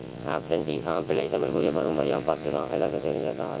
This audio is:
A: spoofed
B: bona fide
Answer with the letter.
A